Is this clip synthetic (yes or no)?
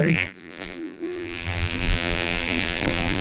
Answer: yes